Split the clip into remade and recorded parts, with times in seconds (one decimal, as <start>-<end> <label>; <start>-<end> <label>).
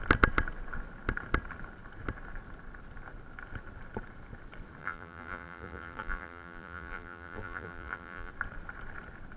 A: 0.0-4.8 recorded; 4.8-8.3 remade; 8.3-9.4 recorded